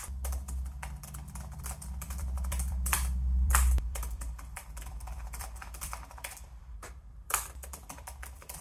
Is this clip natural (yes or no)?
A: no